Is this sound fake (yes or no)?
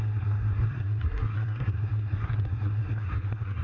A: yes